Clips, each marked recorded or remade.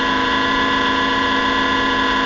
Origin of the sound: recorded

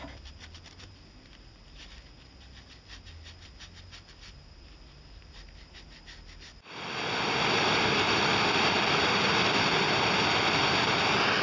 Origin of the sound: recorded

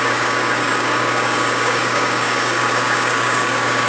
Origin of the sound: remade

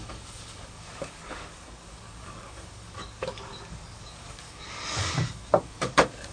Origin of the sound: remade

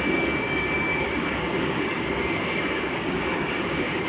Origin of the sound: remade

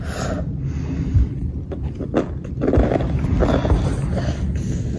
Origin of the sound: recorded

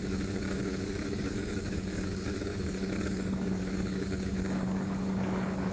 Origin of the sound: remade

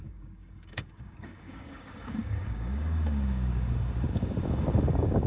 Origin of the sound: remade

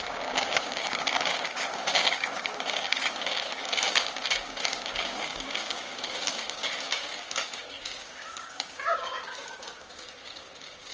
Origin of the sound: remade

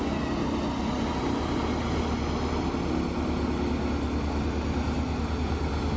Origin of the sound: recorded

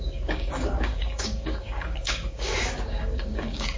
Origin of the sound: remade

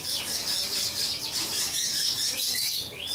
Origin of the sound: remade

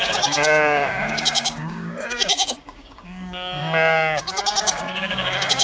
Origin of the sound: remade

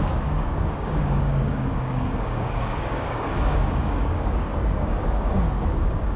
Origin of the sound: remade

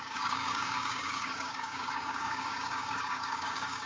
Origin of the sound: remade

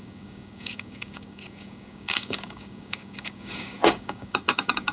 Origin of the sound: remade